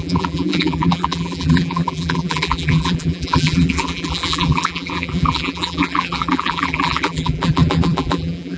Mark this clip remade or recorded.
remade